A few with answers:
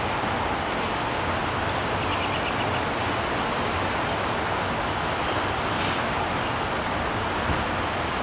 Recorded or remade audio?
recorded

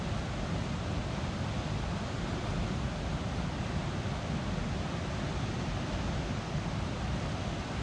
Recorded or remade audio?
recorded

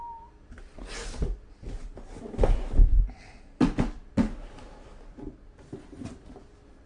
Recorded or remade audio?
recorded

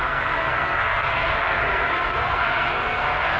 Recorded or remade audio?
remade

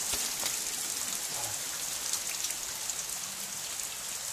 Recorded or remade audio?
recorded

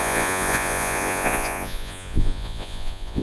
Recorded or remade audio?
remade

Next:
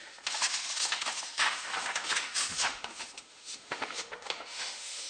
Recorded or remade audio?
remade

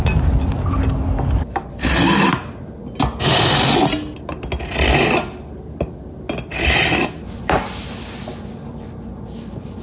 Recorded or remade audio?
recorded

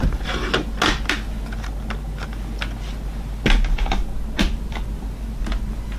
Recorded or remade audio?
recorded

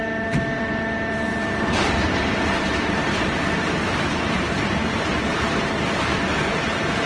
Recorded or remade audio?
remade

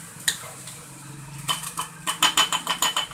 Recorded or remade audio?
remade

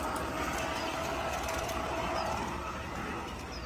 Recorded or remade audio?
recorded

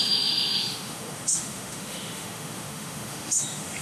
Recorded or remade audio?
remade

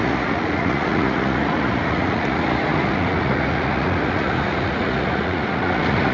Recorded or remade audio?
remade